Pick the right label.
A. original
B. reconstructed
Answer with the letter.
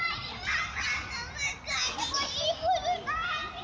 A